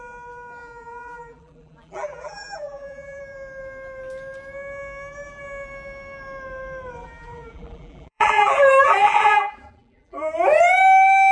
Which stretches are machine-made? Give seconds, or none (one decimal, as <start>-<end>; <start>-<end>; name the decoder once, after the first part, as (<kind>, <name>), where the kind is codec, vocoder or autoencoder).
0.6-3.2 (vocoder, BigVGAN v2); 7.0-10.3